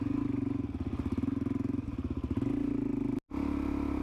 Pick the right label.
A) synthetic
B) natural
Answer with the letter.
B